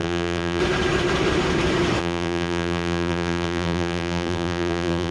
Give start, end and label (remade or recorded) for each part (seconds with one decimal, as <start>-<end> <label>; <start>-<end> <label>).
0.0-0.6 remade; 0.6-2.0 recorded; 2.0-5.1 remade